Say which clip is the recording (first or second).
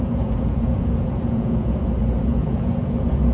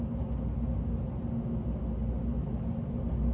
second